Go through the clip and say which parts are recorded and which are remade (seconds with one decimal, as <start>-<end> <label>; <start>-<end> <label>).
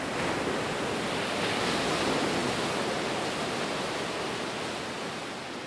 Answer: 0.0-5.7 recorded